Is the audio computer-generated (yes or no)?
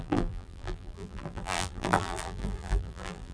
yes